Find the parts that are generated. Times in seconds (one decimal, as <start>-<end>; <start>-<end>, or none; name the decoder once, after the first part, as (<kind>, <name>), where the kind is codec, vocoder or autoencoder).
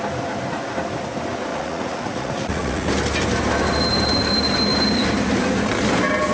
1.5-2.9 (vocoder, Vocos)